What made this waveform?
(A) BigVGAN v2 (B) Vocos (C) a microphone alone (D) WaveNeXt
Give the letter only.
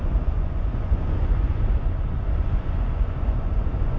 B